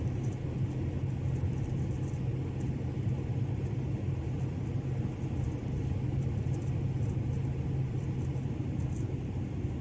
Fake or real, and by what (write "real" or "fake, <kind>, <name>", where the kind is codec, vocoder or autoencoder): real